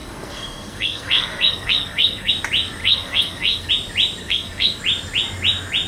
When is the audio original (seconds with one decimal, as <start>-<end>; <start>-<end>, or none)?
2.3-2.8; 3.7-4.2; 4.8-5.9